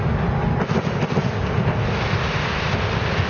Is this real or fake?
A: real